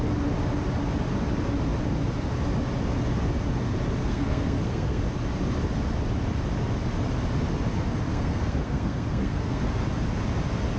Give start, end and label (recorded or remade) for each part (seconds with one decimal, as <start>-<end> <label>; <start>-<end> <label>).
0.0-4.0 recorded; 4.0-5.0 remade; 5.0-8.1 recorded; 8.1-9.6 remade; 9.6-10.8 recorded